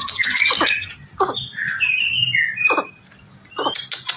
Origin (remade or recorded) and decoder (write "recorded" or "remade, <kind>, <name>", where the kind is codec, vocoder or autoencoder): recorded